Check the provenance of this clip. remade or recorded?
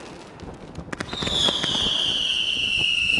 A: recorded